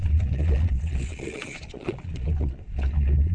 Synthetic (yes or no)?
yes